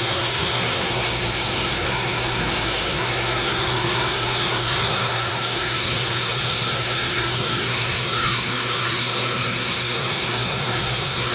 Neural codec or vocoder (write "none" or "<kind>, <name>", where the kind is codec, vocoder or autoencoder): codec, SNAC